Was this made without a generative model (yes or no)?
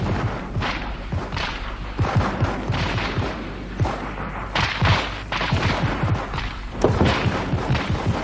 no